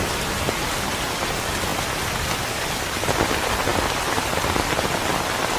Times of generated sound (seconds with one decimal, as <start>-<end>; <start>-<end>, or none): none